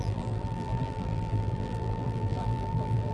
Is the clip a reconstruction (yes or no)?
yes